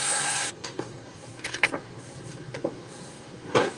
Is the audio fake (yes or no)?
yes